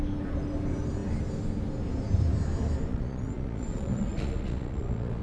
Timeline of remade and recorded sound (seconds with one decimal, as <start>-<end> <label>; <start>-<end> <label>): 0.0-2.9 recorded; 2.9-5.2 remade